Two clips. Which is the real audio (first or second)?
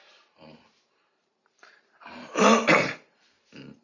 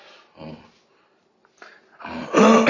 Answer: second